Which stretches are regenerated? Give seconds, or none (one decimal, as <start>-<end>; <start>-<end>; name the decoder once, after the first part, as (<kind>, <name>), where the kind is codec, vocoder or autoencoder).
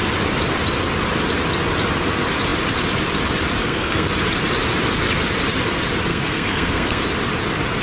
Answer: 3.6-4.1 (codec, SNAC); 6.1-7.0